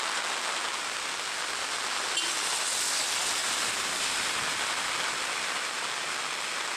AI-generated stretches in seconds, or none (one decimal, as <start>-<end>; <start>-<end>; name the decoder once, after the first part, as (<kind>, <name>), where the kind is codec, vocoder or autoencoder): none